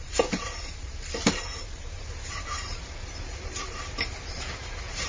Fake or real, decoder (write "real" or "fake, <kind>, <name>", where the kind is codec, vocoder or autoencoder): fake, vocoder, BigVGAN v2